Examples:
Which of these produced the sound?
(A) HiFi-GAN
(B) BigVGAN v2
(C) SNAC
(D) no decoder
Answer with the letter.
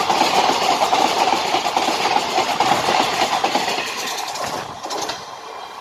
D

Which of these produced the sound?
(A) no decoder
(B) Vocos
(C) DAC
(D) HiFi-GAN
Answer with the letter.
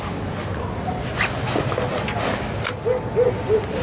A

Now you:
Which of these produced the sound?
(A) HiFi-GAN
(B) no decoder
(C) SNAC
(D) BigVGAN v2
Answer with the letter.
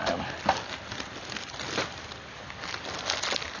B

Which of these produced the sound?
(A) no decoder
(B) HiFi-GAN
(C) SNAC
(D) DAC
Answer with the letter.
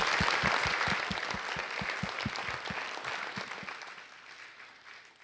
A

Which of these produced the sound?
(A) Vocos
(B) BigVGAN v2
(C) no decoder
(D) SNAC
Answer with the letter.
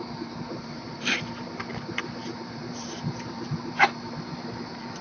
B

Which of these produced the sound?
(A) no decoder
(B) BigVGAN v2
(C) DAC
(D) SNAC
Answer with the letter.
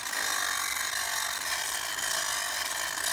A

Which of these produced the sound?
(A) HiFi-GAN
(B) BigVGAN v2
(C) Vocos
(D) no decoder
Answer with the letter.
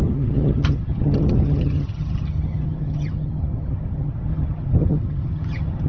A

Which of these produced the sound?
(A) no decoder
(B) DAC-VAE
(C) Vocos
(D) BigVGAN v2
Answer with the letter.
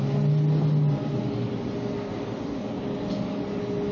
A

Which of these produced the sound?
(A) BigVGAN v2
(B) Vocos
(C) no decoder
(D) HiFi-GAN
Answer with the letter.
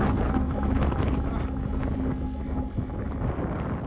C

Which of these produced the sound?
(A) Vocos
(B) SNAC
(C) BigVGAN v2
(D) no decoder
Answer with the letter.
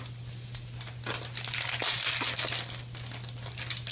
D